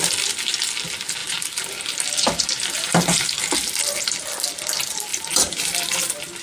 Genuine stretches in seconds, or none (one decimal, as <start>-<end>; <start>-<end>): 0.0-1.2; 3.3-5.1; 5.6-6.4